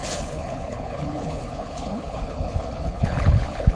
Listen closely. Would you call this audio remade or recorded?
remade